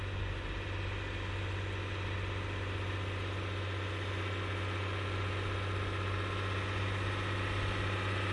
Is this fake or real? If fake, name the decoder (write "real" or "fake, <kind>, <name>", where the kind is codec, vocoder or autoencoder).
real